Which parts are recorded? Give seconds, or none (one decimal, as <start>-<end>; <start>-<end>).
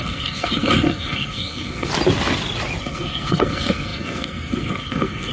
1.9-2.8